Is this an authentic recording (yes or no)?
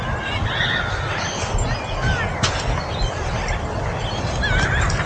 yes